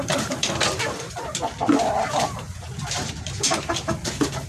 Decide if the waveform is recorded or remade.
remade